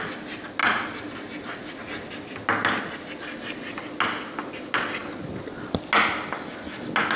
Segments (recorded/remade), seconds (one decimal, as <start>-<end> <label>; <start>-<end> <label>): 0.0-7.2 recorded